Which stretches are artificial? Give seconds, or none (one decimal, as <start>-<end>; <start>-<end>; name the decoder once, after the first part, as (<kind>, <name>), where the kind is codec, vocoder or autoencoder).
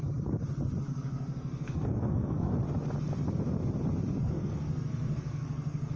0.8-2.5 (codec, SNAC); 4.2-6.0